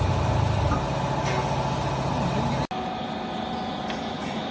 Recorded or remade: recorded